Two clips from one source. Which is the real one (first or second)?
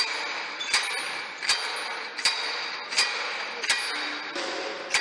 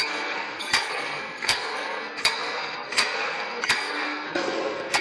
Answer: first